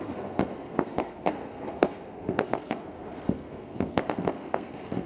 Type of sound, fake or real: fake